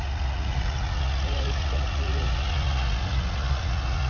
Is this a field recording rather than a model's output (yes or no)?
no